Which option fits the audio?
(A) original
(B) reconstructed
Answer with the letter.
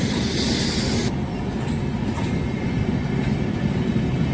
A